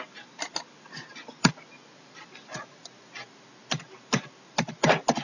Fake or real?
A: real